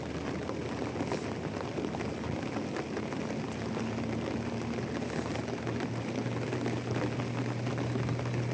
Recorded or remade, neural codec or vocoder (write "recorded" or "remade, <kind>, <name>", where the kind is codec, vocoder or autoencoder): recorded